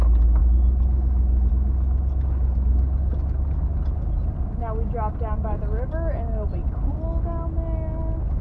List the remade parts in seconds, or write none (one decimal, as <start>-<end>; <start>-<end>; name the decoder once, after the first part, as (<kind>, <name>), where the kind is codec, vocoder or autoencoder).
none